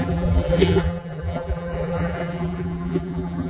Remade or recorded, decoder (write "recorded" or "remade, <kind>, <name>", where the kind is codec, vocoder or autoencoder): remade, vocoder, BigVGAN v2